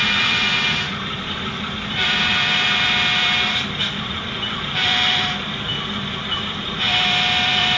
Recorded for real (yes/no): no